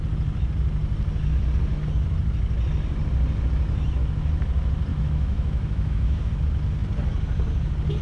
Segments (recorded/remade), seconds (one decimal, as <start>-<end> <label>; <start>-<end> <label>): 0.0-4.9 recorded; 4.9-6.3 remade; 6.3-8.0 recorded